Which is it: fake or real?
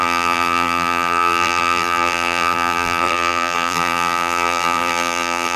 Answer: fake